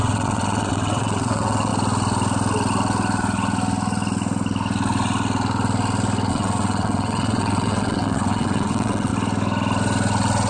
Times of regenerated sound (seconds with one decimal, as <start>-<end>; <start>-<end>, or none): 0.0-1.7; 6.3-9.1